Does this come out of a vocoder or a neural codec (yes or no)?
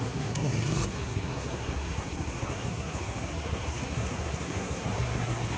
yes